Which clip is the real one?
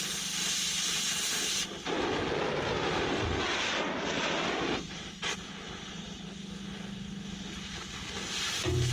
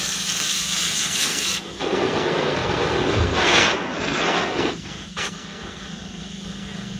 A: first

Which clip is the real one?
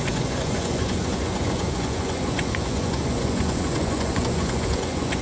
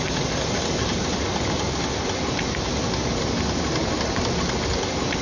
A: second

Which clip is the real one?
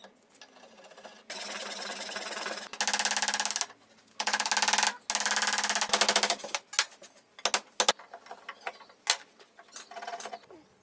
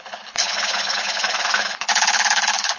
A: first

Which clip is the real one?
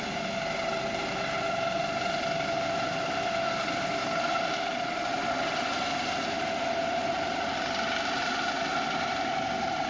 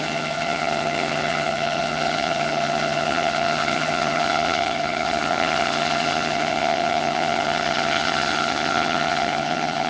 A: first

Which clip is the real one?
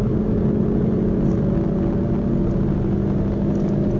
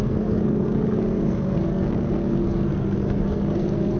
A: first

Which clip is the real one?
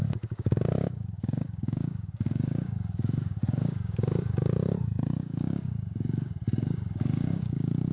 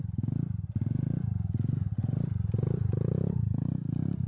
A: second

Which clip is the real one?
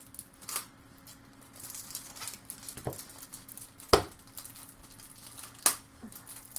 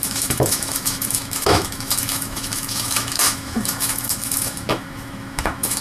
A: first